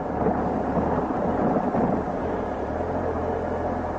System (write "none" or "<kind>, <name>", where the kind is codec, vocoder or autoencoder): none